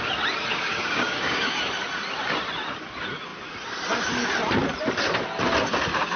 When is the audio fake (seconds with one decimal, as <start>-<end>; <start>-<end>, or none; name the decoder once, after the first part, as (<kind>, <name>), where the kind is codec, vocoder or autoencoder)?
0.5-1.6 (codec, DAC)

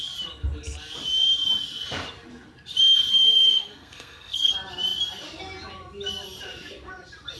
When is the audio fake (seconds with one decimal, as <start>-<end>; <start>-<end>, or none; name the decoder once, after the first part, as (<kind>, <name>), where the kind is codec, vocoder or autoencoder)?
3.1-4.5 (codec, SNAC)

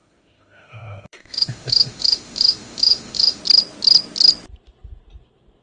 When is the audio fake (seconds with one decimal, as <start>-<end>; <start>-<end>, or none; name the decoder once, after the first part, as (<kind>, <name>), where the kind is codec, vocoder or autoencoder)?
0.0-3.4 (autoencoder, DAC-VAE)

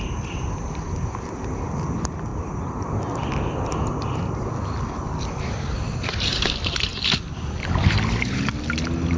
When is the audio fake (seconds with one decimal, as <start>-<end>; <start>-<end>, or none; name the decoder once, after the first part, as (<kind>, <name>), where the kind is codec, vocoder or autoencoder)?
none

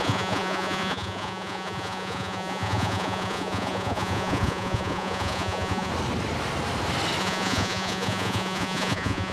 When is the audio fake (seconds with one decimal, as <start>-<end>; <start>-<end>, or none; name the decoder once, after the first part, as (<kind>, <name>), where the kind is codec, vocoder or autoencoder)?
0.0-5.9 (vocoder, Vocos); 7.2-9.3

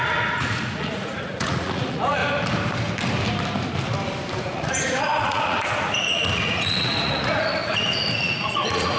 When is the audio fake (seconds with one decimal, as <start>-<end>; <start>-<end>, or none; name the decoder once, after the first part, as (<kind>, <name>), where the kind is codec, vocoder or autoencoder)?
0.0-2.2 (vocoder, Vocos); 4.4-9.0

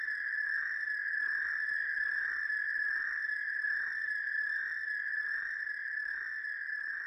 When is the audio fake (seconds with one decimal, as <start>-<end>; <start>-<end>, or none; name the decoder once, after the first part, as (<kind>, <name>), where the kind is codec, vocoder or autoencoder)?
1.8-6.1 (vocoder, BigVGAN v2)